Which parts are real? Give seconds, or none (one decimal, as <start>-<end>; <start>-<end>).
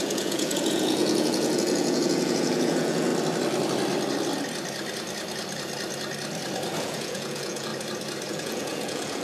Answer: 3.1-6.8; 7.7-8.3